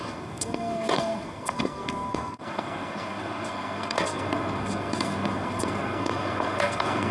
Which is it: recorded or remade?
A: remade